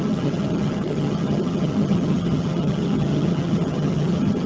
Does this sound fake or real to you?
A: fake